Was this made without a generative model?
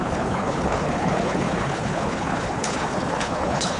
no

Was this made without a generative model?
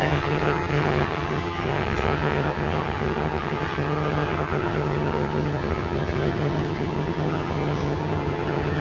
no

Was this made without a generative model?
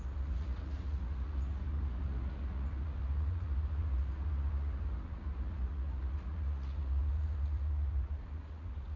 no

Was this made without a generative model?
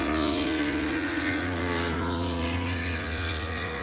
no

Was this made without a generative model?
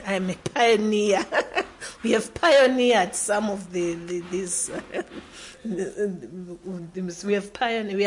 yes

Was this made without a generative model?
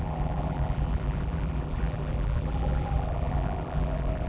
no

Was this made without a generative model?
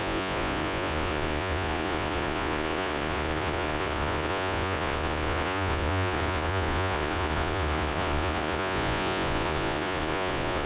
no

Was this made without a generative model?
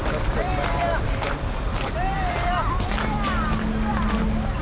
no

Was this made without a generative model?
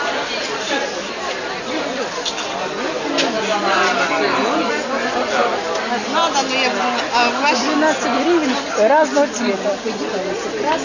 yes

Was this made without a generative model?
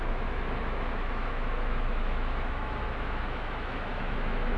no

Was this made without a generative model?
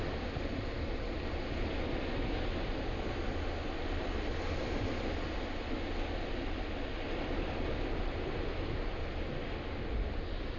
yes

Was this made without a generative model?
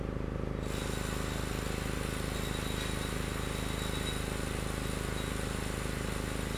yes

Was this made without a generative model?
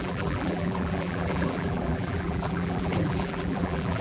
no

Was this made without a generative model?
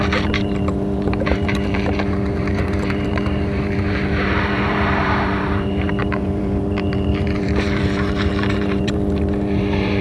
no